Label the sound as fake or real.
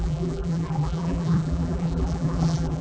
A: fake